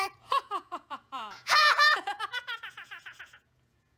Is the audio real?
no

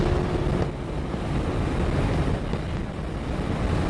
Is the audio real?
yes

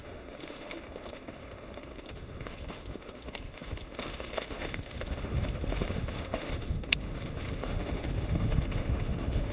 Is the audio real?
no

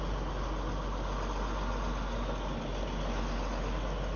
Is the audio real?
yes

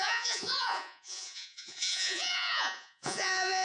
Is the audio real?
no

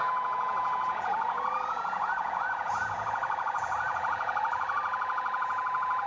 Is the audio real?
no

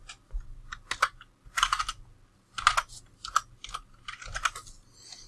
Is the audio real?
yes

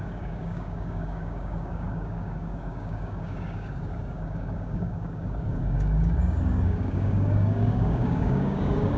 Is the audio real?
no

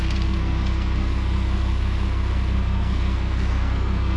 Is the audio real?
no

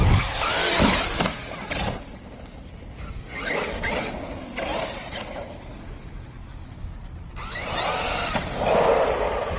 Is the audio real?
yes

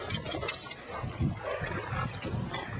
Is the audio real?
yes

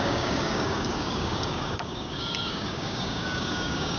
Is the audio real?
no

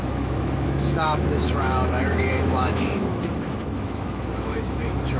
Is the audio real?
no